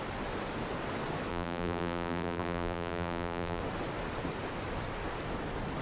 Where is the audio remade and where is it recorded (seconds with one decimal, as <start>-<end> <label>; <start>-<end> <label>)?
0.0-1.3 recorded; 1.3-3.6 remade; 3.6-5.8 recorded